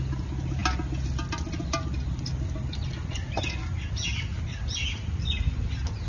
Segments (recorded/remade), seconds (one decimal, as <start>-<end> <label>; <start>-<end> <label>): 0.0-6.1 recorded